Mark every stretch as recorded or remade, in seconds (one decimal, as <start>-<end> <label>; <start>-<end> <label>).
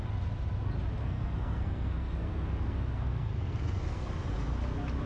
0.0-1.0 recorded; 1.0-4.1 remade; 4.1-5.1 recorded